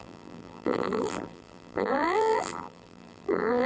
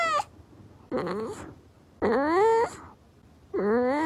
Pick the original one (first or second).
second